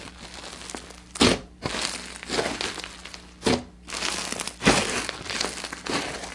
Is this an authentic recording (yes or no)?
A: yes